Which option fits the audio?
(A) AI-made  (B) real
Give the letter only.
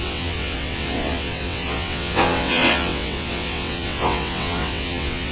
A